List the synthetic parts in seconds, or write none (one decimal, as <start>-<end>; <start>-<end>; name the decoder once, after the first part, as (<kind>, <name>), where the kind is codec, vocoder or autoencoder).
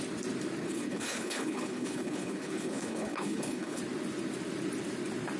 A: 0.6-3.8 (codec, HILCodec)